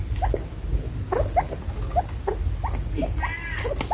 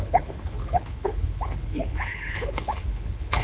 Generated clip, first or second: second